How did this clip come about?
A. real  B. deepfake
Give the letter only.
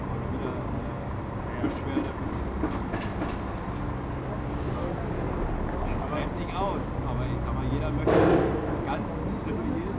A